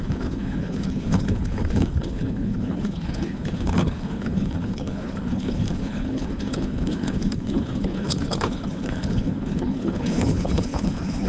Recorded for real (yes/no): no